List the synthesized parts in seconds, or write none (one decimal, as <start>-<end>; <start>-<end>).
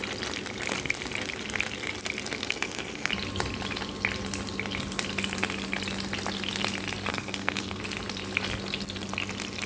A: 2.4-3.1; 7.1-7.8